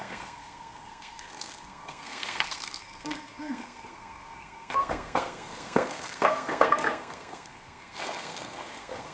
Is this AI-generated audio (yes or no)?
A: yes